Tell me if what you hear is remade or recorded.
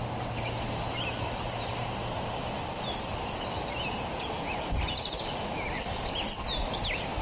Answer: recorded